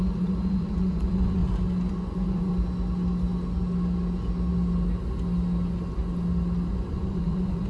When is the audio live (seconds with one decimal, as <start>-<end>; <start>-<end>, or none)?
1.4-1.9; 2.5-6.7